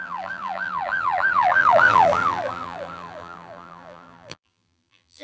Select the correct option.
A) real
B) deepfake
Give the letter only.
B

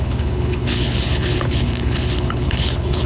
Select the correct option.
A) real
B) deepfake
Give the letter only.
B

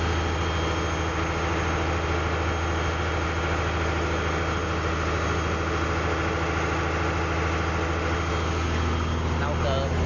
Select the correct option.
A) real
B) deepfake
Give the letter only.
A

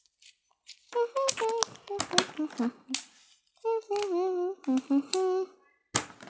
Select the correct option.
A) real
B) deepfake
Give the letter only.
A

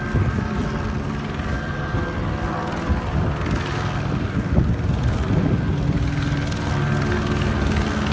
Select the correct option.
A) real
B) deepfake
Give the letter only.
A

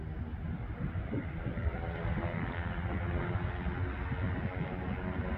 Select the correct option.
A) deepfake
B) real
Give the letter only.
B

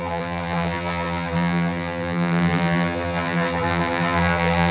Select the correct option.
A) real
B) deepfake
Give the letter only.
B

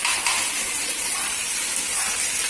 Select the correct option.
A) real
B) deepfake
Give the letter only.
A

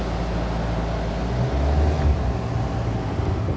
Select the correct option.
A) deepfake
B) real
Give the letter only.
B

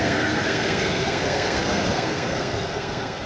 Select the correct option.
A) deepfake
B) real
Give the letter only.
A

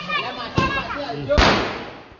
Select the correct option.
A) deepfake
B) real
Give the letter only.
B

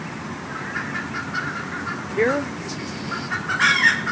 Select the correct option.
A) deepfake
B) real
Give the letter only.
B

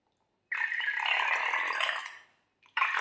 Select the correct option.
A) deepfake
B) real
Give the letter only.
B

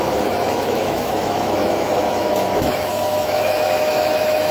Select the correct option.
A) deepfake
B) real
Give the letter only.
A